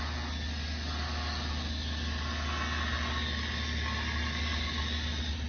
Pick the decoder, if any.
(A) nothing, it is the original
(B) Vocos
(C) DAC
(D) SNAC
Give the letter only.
A